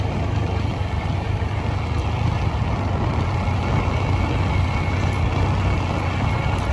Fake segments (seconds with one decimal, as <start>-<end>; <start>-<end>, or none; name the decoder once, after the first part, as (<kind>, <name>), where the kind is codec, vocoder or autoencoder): none